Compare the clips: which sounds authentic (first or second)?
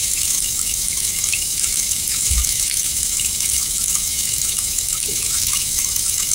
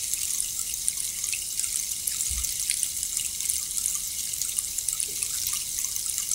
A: second